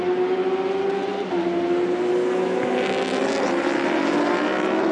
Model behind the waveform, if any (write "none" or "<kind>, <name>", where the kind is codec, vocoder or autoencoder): none